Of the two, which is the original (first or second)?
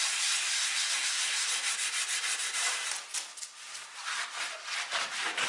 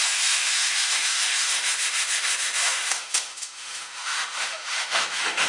first